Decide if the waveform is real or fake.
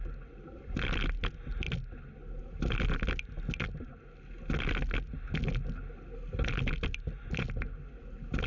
real